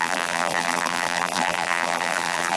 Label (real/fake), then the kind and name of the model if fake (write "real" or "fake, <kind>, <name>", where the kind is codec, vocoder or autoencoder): fake, vocoder, BigVGAN v2